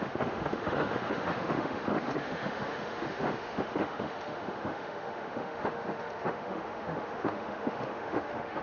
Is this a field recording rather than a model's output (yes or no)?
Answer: no